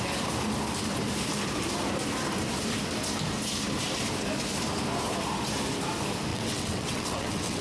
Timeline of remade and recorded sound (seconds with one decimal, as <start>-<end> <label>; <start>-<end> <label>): 0.0-6.3 recorded; 6.3-7.6 remade